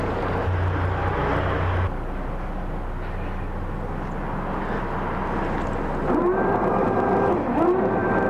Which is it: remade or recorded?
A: recorded